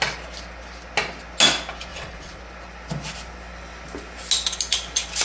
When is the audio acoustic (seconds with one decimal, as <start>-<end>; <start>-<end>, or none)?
0.0-1.9; 2.4-5.2